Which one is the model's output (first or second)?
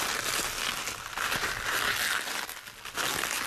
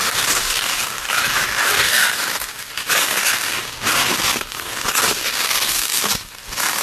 second